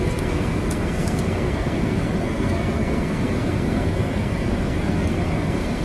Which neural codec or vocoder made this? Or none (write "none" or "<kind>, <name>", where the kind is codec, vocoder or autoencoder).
codec, SNAC